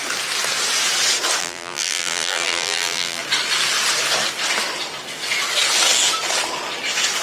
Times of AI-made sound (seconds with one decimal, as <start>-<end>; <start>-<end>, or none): 1.4-3.2